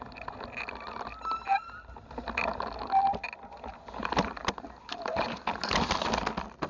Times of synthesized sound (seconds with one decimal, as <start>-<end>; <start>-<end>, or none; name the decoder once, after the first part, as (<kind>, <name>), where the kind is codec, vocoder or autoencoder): none